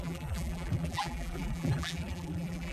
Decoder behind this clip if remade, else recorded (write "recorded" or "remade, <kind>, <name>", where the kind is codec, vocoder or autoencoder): remade, vocoder, BigVGAN v2